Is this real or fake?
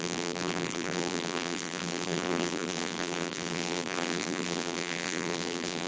fake